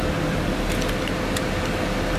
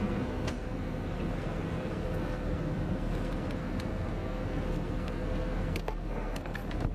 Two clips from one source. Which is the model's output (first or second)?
second